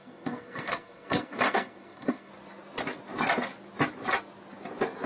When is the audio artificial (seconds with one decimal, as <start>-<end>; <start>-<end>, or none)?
0.0-2.3